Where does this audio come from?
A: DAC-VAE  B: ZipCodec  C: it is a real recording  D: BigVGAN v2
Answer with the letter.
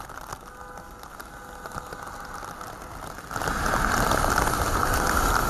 C